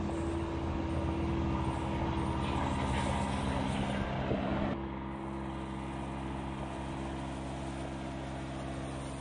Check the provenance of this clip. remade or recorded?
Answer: recorded